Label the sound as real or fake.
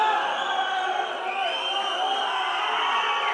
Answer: real